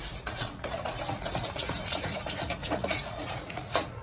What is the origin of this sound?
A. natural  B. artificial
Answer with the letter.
B